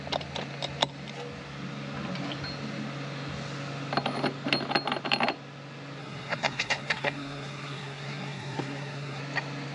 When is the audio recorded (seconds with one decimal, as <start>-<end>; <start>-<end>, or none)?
0.0-6.0; 9.2-9.7